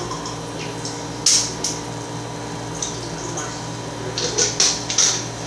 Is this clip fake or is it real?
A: real